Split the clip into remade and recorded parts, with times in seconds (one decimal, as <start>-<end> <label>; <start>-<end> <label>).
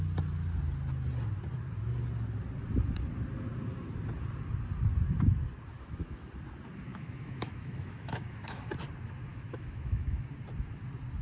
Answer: 0.0-5.7 recorded; 5.7-6.3 remade; 6.3-6.9 recorded; 6.9-8.6 remade; 8.6-9.3 recorded; 9.3-10.3 remade; 10.3-11.2 recorded